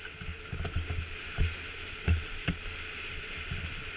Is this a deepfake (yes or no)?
no